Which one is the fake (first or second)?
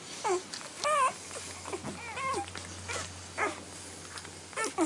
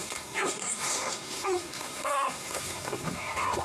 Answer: second